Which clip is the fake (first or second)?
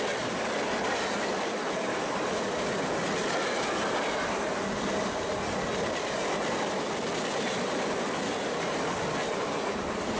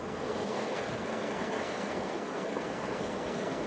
second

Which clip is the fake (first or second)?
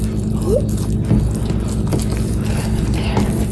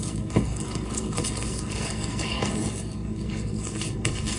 second